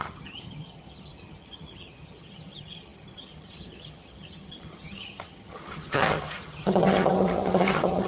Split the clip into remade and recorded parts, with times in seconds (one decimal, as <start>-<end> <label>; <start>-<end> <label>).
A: 0.0-8.1 remade